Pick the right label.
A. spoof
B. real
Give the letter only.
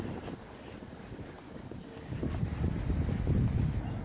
B